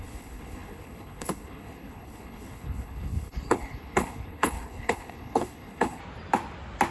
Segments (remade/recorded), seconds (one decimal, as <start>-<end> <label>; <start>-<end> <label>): 0.0-6.0 remade; 6.0-6.9 recorded